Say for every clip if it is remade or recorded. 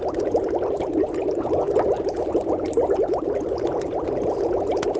recorded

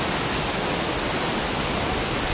recorded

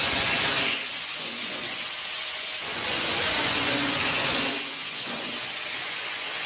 remade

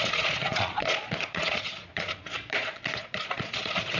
remade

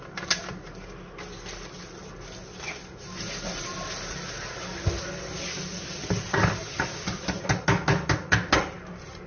recorded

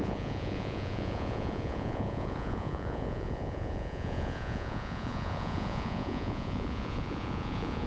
remade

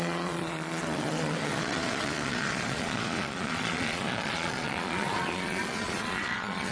remade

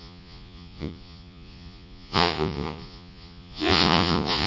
remade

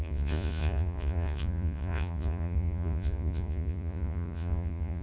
remade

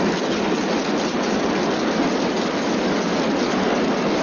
recorded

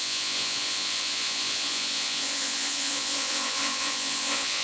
remade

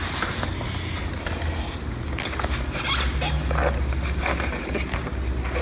recorded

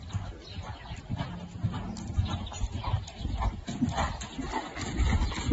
recorded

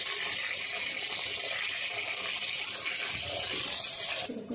recorded